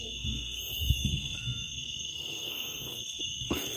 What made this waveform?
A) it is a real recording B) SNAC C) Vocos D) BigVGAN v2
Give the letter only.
B